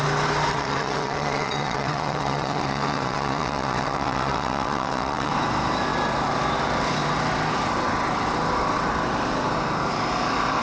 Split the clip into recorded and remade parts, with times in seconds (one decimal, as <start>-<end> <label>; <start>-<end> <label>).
0.0-0.5 recorded; 0.5-5.3 remade; 5.3-10.6 recorded